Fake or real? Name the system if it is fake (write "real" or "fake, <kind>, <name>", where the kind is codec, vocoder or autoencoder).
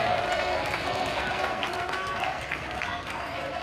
fake, codec, SNAC